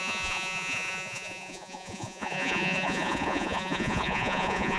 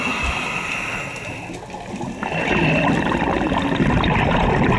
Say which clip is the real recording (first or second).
second